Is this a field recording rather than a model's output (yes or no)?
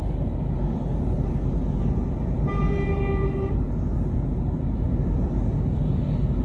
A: yes